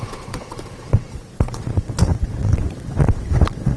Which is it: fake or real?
fake